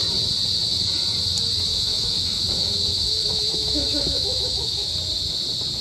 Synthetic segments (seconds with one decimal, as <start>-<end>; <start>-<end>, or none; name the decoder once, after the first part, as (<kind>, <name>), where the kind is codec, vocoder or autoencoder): 1.7-4.9 (autoencoder, DAC-VAE)